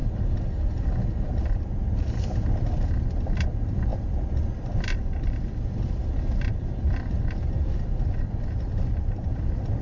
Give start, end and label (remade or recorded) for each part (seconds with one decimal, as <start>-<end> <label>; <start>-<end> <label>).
0.0-1.3 recorded; 1.3-9.8 remade